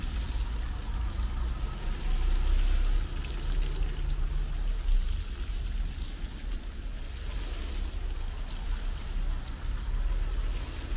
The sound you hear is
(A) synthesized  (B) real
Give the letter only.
B